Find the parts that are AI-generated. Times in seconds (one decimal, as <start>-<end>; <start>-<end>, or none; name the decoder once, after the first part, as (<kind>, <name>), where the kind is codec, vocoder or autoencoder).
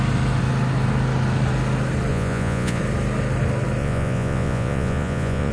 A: 2.1-2.8 (vocoder, Vocos); 3.8-5.5